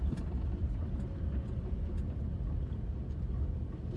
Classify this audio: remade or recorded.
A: recorded